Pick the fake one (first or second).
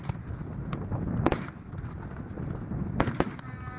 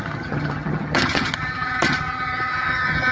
second